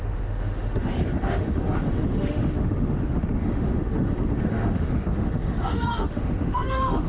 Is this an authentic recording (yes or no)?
no